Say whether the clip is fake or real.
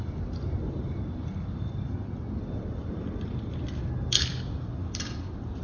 real